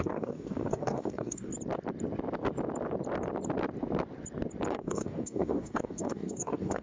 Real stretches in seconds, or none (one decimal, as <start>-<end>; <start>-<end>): 1.5-4.7